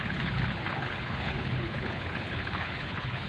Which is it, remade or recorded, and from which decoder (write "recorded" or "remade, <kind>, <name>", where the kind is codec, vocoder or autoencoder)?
remade, codec, HILCodec